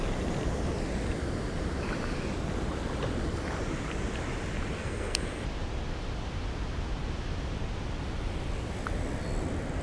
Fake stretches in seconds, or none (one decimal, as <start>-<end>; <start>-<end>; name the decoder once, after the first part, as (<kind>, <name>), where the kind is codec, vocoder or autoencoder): 4.8-5.4 (codec, SNAC)